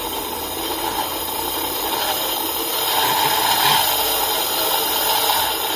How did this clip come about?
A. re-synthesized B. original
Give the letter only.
B